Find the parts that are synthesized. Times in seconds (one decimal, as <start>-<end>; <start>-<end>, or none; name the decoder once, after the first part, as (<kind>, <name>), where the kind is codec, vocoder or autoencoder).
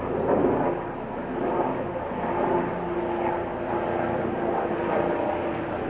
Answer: none